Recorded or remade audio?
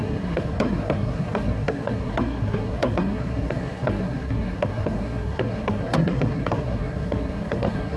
remade